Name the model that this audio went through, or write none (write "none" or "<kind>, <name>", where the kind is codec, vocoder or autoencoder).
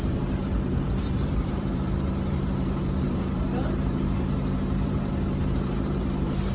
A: vocoder, BigVGAN v2